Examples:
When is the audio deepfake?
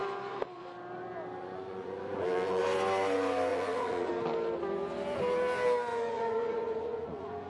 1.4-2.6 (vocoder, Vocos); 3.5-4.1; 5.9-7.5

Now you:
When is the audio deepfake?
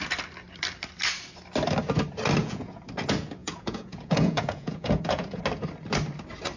2.4-2.9 (vocoder, Vocos); 3.4-5.4